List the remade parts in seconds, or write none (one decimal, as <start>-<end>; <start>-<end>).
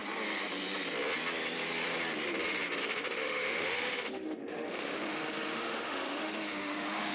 2.8-7.1